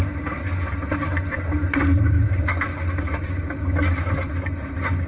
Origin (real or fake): real